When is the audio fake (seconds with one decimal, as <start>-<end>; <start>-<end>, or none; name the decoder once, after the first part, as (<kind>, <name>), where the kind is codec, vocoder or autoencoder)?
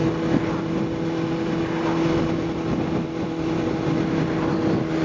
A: none